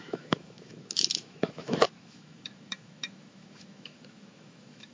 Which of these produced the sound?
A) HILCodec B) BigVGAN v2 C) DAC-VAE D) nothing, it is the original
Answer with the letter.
C